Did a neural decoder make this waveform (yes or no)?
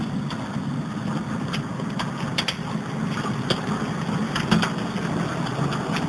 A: no